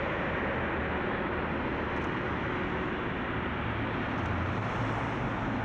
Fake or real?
real